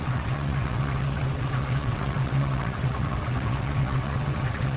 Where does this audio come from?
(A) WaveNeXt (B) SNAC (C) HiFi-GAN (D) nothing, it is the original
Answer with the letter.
A